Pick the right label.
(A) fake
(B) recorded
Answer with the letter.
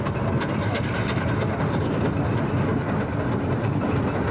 A